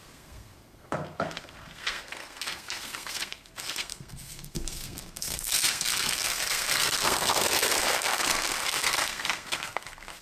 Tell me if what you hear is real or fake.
fake